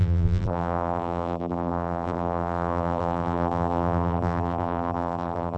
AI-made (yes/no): yes